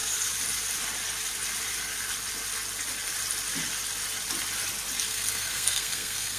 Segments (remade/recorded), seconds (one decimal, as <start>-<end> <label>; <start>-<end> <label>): 0.0-5.1 recorded; 5.1-6.4 remade